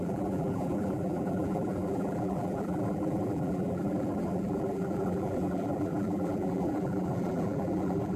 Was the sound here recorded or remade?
remade